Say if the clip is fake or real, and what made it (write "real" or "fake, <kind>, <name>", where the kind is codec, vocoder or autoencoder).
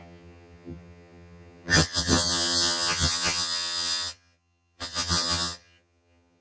fake, vocoder, HiFi-GAN